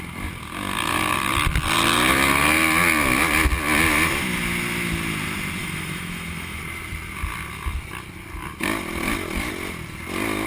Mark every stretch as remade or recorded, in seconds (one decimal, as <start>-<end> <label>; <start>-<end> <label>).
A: 0.0-5.6 recorded; 5.6-6.6 remade; 6.6-10.5 recorded